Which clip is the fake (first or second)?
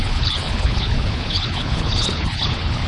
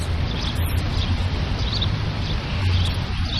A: first